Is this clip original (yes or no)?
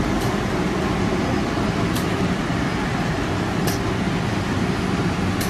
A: yes